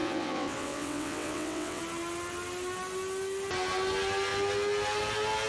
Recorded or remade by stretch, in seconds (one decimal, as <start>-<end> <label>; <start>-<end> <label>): 0.0-1.8 remade; 1.8-5.5 recorded